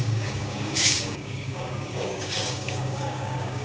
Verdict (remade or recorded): remade